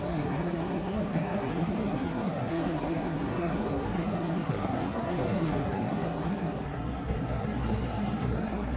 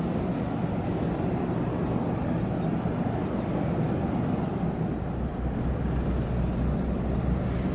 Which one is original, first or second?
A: second